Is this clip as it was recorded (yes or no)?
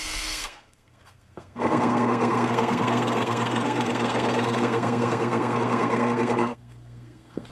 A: no